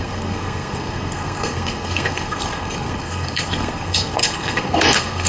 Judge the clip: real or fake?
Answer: fake